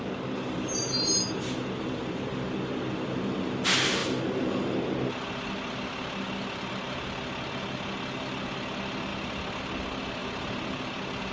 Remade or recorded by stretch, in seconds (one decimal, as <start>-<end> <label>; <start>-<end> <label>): 0.0-9.1 recorded; 9.1-9.6 remade; 9.6-10.2 recorded; 10.2-11.3 remade